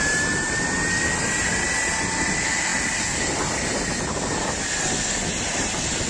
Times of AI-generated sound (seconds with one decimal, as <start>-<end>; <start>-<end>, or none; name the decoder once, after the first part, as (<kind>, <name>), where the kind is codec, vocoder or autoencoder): none

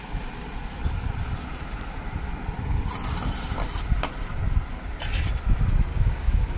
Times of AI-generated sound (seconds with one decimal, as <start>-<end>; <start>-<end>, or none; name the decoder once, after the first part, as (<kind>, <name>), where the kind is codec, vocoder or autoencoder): 5.9-6.6 (codec, DAC)

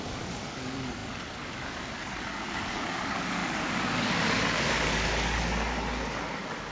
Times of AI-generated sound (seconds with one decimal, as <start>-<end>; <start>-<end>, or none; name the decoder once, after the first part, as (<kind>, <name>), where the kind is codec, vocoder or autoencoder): 0.0-6.7 (codec, DAC)

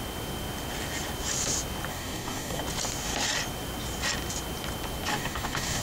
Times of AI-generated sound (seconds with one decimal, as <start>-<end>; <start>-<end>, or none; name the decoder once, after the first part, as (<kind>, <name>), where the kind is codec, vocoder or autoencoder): 1.9-2.6 (codec, DAC); 5.1-5.8

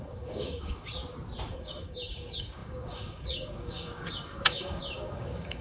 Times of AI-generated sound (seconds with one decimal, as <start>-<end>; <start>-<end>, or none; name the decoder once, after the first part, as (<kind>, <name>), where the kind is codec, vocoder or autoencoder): 0.0-1.0 (codec, DAC); 1.5-5.6

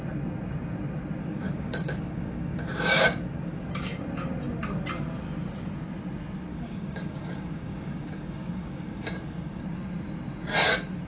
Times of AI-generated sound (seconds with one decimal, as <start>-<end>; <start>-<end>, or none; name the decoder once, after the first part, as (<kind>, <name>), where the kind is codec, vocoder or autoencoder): 1.2-3.7 (codec, DAC); 6.5-9.6

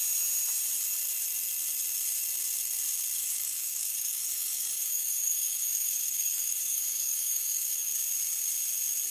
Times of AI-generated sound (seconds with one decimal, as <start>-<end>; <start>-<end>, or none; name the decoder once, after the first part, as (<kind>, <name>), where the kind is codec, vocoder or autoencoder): 3.2-7.9 (codec, DAC)

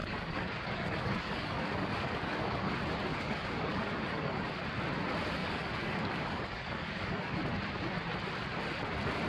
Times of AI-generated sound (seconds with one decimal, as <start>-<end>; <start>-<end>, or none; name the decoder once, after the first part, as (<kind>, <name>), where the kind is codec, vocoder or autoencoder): 0.0-2.7 (codec, DAC); 3.1-4.4; 5.4-7.4